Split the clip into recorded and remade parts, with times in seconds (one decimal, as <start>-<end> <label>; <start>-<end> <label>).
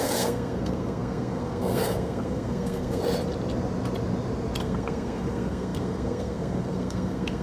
0.0-3.0 remade; 3.0-4.6 recorded; 4.6-7.4 remade